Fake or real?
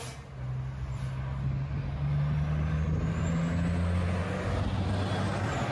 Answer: real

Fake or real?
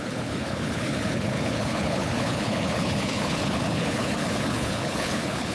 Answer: fake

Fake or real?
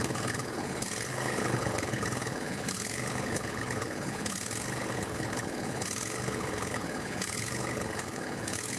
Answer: fake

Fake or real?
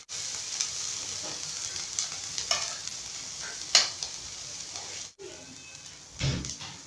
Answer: real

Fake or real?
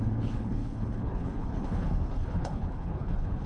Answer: fake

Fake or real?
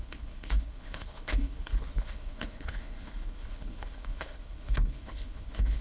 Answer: fake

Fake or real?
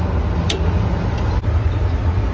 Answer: real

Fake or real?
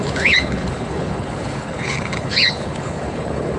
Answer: fake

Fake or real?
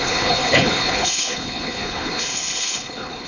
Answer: fake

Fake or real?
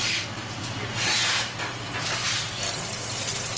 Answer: real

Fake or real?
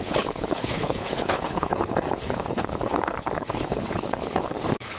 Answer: fake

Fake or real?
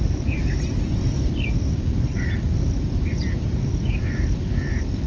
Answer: real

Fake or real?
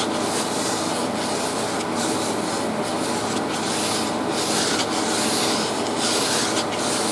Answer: real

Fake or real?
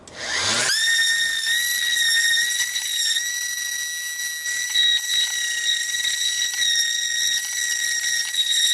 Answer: real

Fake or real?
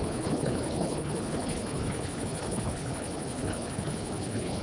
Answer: fake